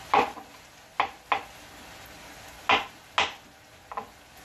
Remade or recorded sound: recorded